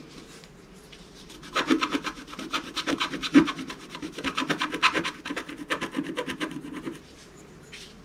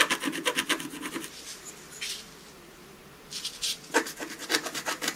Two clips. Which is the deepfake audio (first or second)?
first